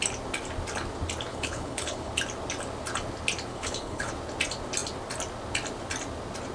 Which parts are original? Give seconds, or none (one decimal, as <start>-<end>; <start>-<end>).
0.0-1.3; 2.1-3.5; 4.1-6.5